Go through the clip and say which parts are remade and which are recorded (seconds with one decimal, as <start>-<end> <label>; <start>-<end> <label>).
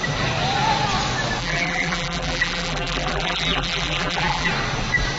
0.0-1.4 recorded; 1.4-4.5 remade; 4.5-5.2 recorded